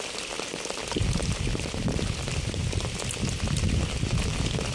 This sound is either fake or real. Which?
real